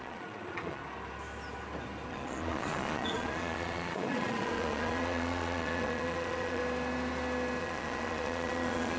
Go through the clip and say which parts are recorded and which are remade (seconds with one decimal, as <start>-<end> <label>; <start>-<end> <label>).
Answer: 0.0-0.8 remade; 0.8-2.1 recorded; 2.1-6.6 remade; 6.6-7.6 recorded; 7.6-9.0 remade